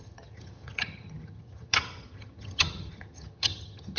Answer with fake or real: fake